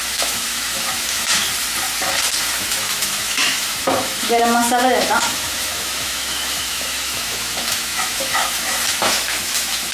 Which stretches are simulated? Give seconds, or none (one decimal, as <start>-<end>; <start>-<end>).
0.0-1.4; 2.4-9.9